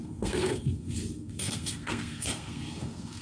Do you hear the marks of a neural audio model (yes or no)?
yes